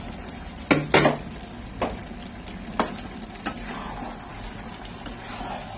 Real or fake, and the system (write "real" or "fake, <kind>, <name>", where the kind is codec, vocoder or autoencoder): real